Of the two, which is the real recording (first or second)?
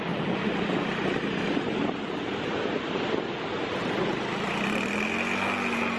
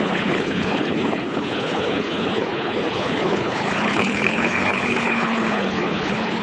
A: first